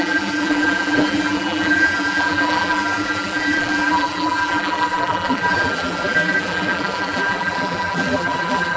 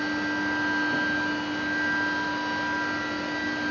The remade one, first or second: first